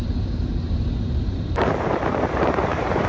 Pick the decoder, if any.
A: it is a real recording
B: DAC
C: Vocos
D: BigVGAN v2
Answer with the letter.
D